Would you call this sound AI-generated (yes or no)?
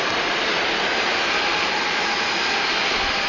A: no